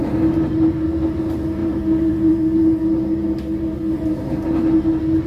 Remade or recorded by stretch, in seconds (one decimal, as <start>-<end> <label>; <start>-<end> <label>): 0.0-5.3 recorded